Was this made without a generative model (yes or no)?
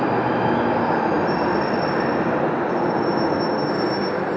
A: yes